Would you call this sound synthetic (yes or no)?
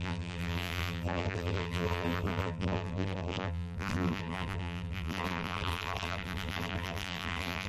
yes